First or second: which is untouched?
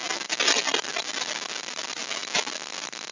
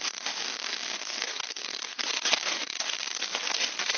first